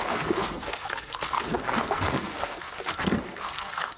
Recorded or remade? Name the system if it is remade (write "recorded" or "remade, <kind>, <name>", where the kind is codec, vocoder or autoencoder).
remade, codec, SNAC